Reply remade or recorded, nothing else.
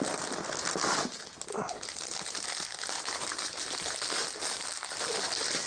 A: recorded